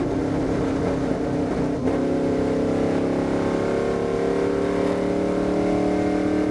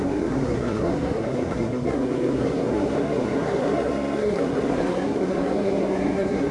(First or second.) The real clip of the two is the first